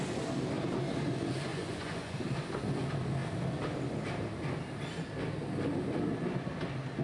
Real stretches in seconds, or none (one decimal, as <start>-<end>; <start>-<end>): 0.0-1.5; 2.2-7.0